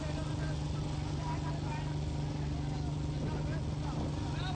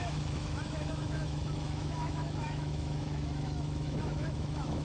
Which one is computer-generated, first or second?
second